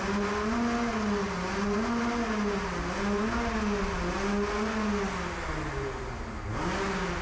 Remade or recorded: recorded